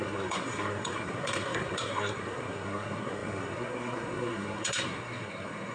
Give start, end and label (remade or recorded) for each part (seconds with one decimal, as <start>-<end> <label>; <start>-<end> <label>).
0.0-5.7 remade